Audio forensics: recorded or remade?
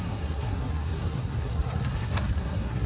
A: remade